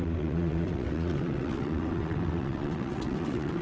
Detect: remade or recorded remade